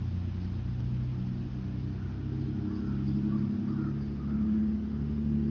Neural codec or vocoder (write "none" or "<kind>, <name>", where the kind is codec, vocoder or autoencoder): none